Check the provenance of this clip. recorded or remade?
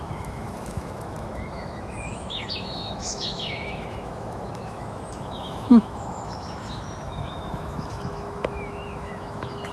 remade